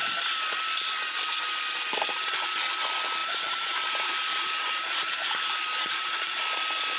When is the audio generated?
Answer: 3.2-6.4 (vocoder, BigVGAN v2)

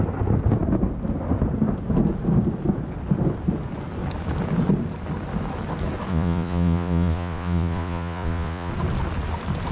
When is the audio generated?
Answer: 6.1-8.7 (vocoder, Vocos)